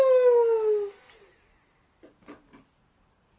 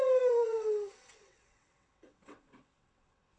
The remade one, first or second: second